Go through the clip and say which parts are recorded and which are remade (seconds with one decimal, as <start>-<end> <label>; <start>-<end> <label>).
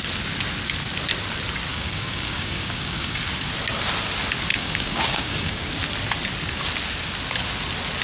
0.0-1.7 recorded; 1.7-3.2 remade; 3.2-4.5 recorded; 4.5-5.7 remade; 5.7-8.0 recorded